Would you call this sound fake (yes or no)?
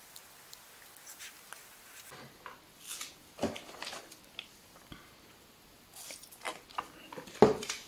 no